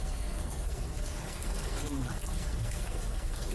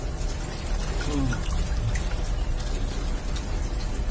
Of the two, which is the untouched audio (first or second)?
second